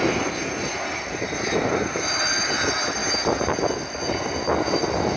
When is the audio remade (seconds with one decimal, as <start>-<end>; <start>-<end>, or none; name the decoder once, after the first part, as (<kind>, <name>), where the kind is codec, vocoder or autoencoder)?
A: none